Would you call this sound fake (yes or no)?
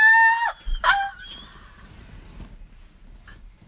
no